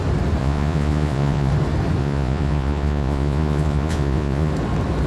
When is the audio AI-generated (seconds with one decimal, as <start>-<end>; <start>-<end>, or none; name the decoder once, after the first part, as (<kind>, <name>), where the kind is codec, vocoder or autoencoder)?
0.4-1.5 (vocoder, Vocos); 2.0-4.5